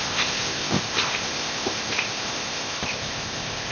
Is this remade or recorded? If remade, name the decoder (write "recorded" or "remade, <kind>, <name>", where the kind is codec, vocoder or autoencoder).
remade, codec, ZipCodec